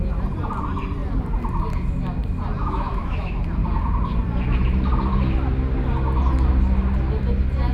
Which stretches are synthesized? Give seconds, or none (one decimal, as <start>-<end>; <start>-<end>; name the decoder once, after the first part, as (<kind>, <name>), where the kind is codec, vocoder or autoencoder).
2.6-3.4 (autoencoder, DAC-VAE)